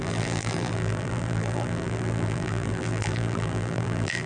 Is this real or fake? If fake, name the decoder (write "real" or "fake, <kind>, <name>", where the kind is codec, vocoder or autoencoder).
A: fake, vocoder, BigVGAN v2